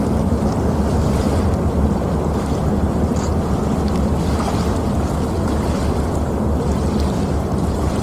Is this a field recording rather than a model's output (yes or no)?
yes